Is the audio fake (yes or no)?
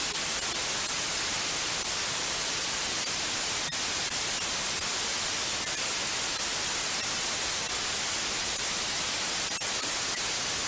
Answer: no